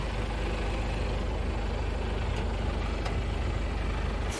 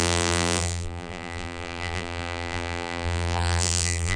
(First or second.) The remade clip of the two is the second